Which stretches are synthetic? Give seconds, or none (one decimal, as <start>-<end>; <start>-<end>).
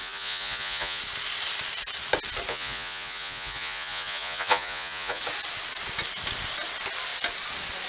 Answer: 0.0-1.0; 2.5-5.2